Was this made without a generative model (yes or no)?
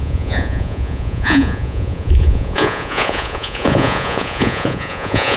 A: no